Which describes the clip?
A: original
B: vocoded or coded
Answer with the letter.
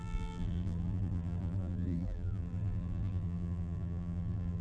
B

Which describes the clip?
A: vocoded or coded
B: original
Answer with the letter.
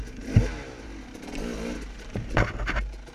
B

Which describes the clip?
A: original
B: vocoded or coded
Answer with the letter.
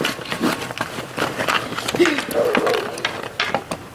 A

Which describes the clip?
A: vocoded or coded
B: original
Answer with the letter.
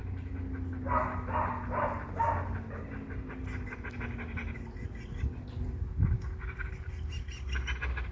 B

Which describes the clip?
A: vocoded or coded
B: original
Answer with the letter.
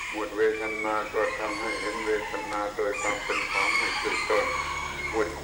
A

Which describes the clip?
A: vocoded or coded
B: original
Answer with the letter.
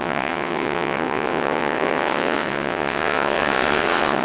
A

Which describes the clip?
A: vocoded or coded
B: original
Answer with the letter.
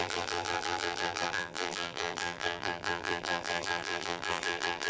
A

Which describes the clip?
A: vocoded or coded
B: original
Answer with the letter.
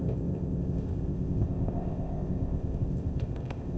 A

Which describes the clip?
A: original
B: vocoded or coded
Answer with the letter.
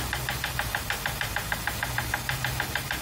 B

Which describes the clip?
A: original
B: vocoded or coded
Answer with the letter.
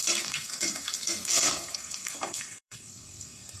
B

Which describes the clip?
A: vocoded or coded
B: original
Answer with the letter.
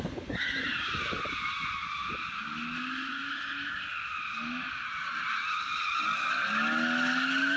B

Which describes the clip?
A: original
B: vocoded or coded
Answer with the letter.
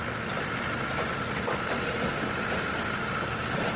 A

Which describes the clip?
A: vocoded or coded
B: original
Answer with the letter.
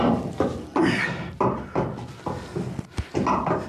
B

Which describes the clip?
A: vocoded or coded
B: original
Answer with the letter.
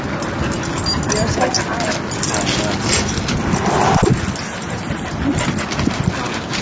B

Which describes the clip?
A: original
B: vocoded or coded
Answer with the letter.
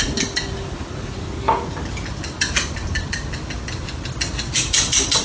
A